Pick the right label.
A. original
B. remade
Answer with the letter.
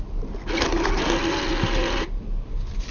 A